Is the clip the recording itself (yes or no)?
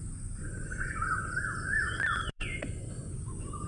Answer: no